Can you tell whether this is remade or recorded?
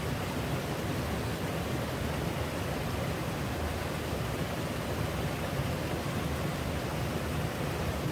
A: recorded